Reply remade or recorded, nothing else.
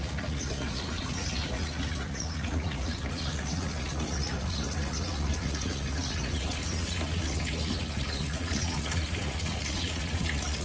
remade